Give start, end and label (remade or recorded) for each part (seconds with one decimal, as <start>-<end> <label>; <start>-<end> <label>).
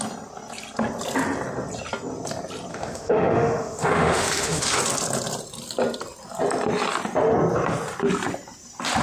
0.0-2.7 recorded; 2.7-4.8 remade; 4.8-9.0 recorded